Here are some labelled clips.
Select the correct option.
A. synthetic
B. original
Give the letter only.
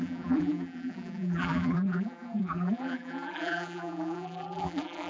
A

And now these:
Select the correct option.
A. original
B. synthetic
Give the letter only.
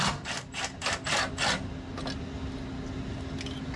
A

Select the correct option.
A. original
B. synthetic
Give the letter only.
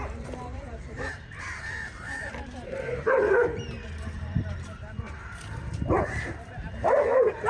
B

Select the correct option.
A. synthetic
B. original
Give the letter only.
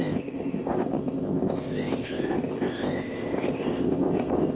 A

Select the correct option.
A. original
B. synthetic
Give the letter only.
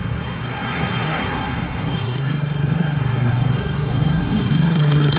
B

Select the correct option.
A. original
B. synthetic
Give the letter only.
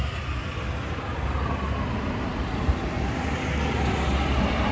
A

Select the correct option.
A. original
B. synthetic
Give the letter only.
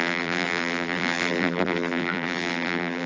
B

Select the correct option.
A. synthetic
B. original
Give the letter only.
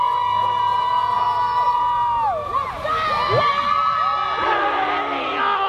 B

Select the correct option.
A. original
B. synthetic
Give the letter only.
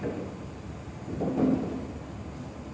A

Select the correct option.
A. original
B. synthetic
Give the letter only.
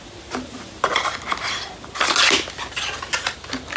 A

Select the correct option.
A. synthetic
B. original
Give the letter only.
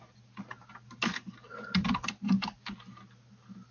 B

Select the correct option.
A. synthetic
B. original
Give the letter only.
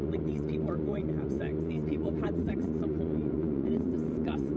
A